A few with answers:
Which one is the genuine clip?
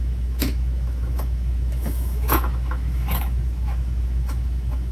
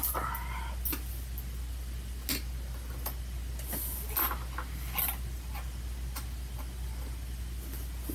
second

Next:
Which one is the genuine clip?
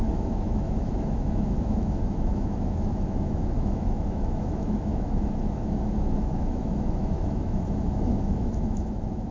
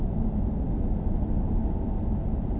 second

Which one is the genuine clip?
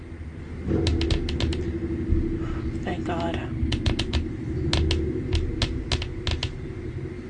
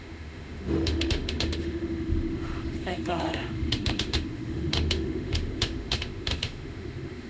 first